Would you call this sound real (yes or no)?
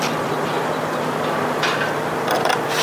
no